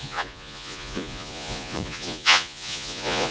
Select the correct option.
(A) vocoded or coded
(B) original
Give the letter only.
A